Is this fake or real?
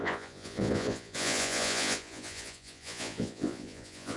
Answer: fake